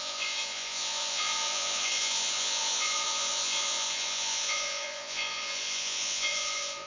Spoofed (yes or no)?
yes